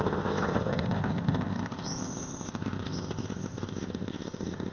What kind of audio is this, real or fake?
fake